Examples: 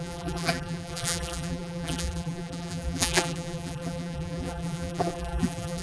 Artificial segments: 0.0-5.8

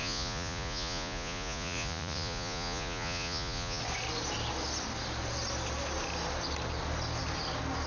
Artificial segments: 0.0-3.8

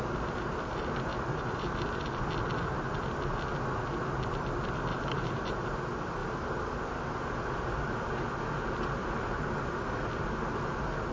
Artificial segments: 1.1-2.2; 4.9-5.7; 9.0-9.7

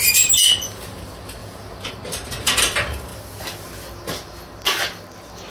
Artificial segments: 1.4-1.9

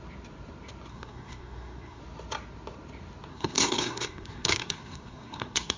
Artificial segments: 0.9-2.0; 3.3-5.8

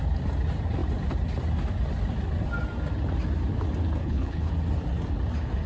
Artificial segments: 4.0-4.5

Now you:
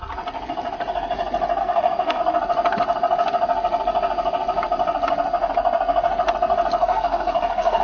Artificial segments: 1.6-2.2; 6.8-7.8